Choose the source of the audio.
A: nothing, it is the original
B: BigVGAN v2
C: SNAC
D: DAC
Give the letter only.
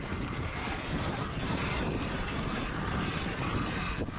B